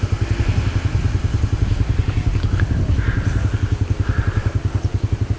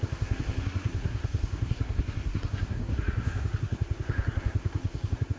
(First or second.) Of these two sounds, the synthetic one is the second